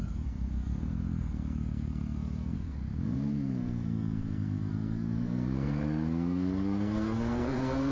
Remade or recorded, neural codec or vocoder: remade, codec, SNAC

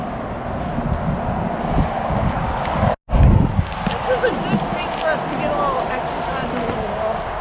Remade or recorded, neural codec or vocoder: recorded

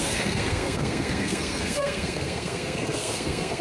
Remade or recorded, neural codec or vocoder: remade, codec, SNAC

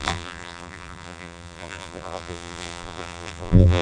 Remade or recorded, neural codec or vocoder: remade, vocoder, BigVGAN v2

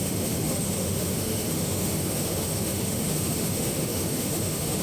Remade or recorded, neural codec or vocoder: remade, autoencoder, DAC-VAE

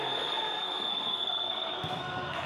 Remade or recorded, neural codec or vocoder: remade, codec, SNAC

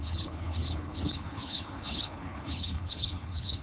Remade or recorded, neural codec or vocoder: remade, codec, HILCodec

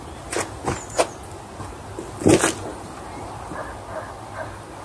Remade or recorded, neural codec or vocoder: recorded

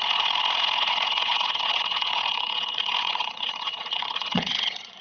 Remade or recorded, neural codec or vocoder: remade, vocoder, Vocos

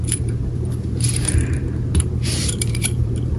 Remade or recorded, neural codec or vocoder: remade, vocoder, BigVGAN v2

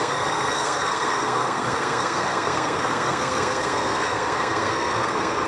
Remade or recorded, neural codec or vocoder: remade, codec, SNAC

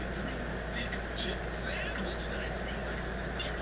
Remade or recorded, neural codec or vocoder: recorded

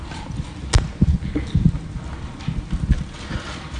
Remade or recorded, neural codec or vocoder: recorded